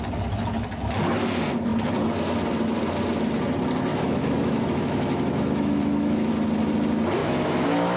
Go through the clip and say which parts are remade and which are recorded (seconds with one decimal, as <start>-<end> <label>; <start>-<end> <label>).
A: 0.0-3.9 recorded; 3.9-6.3 remade; 6.3-7.2 recorded; 7.2-8.0 remade